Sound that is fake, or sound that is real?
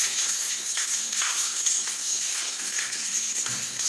fake